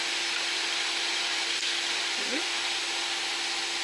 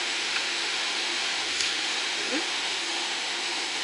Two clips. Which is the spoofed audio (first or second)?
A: second